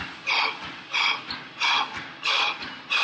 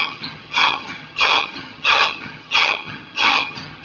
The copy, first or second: second